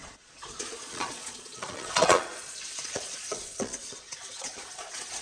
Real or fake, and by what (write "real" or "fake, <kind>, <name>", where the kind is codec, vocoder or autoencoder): fake, vocoder, Vocos